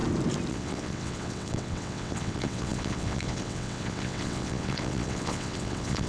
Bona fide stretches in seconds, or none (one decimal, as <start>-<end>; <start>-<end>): 0.0-0.5